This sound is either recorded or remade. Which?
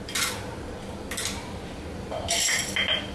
recorded